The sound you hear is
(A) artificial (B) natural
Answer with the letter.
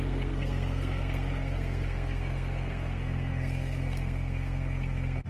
A